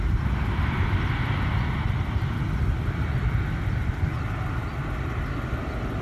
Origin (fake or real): real